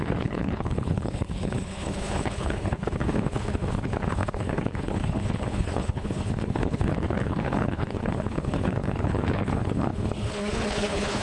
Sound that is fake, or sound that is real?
fake